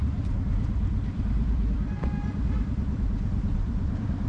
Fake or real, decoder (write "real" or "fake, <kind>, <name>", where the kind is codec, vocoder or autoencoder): fake, vocoder, BigVGAN v2